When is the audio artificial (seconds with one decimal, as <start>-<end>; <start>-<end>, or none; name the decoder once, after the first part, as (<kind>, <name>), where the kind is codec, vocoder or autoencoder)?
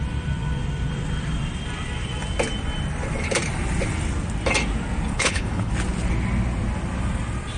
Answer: 5.1-5.7 (codec, HILCodec)